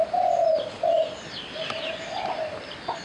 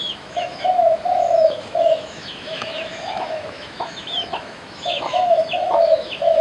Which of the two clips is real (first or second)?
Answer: first